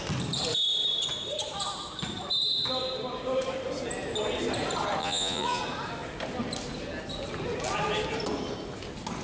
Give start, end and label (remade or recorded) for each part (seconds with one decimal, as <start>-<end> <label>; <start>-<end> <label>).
0.0-5.0 recorded; 5.0-5.6 remade; 5.6-9.2 recorded